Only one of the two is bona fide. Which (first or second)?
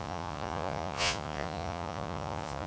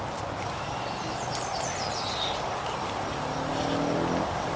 second